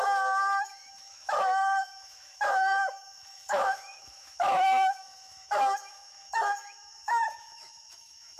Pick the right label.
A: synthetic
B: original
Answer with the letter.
A